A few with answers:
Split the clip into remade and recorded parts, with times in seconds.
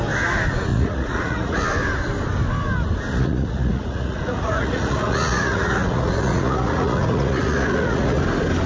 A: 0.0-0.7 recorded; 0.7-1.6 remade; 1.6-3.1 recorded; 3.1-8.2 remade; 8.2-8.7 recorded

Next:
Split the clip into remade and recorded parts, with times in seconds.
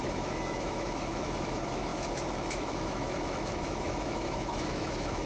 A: 0.0-5.3 remade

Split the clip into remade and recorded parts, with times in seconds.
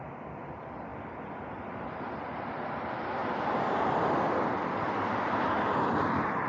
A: 0.0-3.2 recorded; 3.2-4.0 remade; 4.0-6.5 recorded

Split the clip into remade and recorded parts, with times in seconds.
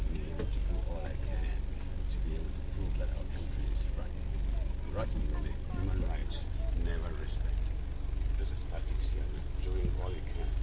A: 0.0-10.6 recorded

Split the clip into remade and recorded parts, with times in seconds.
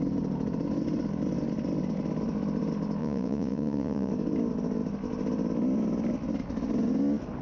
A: 0.0-3.0 recorded; 3.0-4.1 remade; 4.1-7.4 recorded